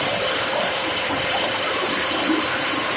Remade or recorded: remade